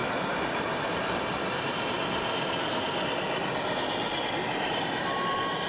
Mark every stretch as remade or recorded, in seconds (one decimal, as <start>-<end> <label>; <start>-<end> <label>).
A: 0.0-5.7 recorded